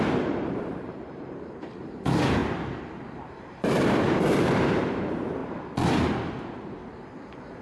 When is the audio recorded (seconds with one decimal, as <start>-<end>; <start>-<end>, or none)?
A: 5.4-6.3